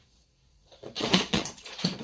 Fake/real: fake